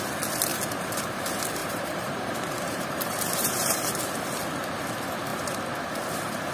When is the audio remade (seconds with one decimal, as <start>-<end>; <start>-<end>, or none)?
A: 0.5-1.0; 1.6-4.0